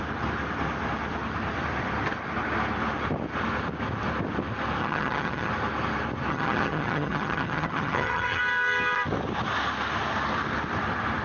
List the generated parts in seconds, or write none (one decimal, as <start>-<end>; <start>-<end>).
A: 4.8-5.5; 6.3-8.4